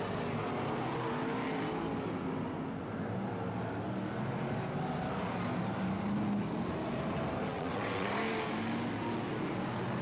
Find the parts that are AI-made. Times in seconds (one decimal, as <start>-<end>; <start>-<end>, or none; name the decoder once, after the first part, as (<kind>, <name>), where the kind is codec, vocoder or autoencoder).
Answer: 7.5-8.1 (vocoder, WaveNeXt)